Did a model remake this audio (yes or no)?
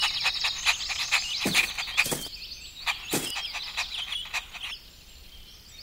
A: no